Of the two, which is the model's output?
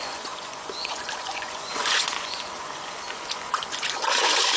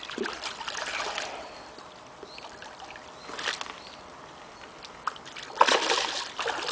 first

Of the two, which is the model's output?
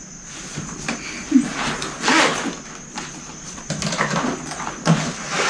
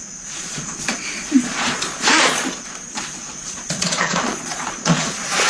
second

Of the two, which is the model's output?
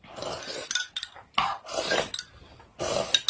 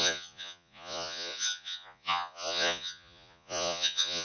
second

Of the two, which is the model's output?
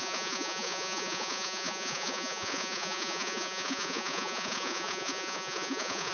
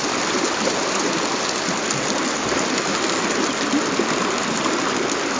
first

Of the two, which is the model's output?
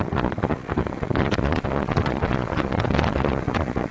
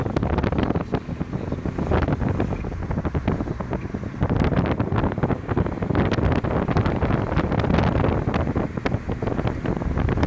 first